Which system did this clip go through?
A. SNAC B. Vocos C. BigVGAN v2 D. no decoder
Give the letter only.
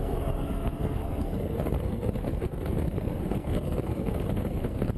A